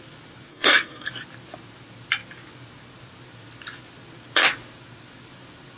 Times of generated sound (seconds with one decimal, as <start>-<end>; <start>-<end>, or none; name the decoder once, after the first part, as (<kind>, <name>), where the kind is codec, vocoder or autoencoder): 0.5-1.1 (codec, SNAC)